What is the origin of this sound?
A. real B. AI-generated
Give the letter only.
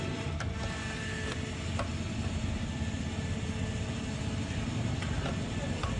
A